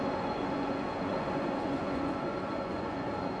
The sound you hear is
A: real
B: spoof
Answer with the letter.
B